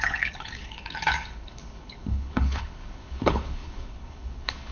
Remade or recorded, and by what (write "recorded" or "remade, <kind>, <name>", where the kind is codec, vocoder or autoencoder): remade, codec, HILCodec